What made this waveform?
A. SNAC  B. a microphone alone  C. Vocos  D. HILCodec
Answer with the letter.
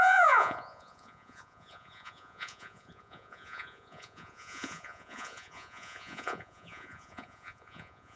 C